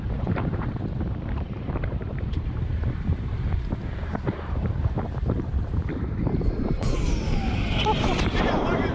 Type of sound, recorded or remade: remade